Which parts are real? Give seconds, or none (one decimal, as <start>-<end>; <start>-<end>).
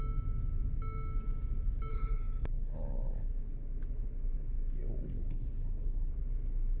0.0-1.9; 3.3-5.1; 6.1-6.8